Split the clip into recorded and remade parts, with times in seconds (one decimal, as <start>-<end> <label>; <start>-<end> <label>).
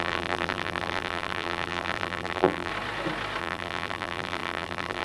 0.0-2.7 remade; 2.7-3.4 recorded; 3.4-5.0 remade